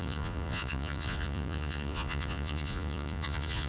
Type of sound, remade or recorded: remade